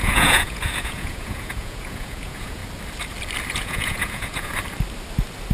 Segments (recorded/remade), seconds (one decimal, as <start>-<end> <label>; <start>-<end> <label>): 0.0-2.6 remade; 2.6-3.5 recorded; 3.5-4.5 remade; 4.5-5.5 recorded